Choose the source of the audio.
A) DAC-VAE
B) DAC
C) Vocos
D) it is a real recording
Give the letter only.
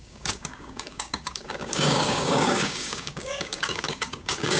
B